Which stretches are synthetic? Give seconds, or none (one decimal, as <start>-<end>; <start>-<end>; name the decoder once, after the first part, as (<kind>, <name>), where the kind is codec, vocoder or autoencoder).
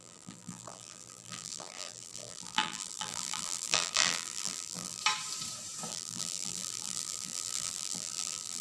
0.0-5.0 (vocoder, BigVGAN v2); 5.9-8.6